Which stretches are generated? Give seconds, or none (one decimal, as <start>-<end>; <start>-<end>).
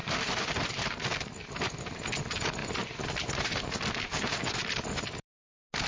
0.0-0.8; 2.6-3.3; 4.1-5.3